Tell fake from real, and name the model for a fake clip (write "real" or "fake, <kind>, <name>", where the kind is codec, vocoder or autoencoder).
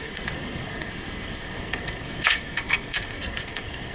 fake, codec, SNAC